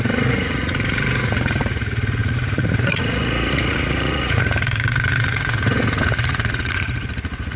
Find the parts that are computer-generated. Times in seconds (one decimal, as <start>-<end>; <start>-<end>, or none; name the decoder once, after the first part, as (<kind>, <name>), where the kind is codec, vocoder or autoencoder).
0.0-7.6 (vocoder, Vocos)

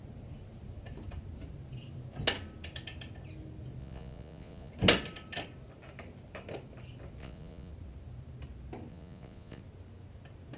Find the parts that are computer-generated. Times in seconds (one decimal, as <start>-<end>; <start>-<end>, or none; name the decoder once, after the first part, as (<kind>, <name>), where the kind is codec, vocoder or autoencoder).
3.8-4.7 (vocoder, Vocos); 7.2-7.7; 8.9-9.6